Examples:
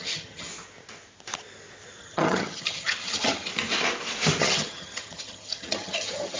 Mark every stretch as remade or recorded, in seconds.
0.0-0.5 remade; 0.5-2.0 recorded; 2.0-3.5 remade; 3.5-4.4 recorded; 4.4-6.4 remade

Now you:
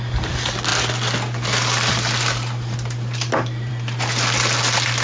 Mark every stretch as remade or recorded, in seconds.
0.0-5.0 recorded

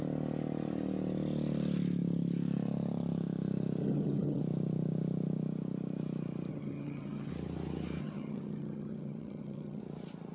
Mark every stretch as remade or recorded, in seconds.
0.0-3.8 recorded; 3.8-4.4 remade; 4.4-6.5 recorded; 6.5-7.3 remade; 7.3-8.0 recorded; 8.0-9.8 remade; 9.8-10.3 recorded

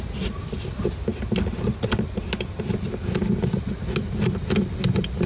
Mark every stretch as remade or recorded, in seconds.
0.0-5.3 recorded

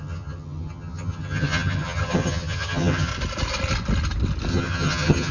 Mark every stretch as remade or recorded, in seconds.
0.0-3.1 remade; 3.1-4.5 recorded; 4.5-5.3 remade

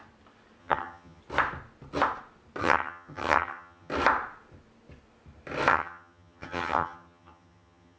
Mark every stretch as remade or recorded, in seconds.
0.0-0.6 recorded; 0.6-1.2 remade; 1.2-2.6 recorded; 2.6-3.9 remade; 3.9-5.7 recorded; 5.7-8.0 remade

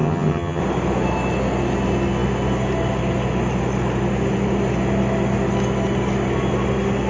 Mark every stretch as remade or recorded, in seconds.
0.0-0.6 remade; 0.6-7.1 recorded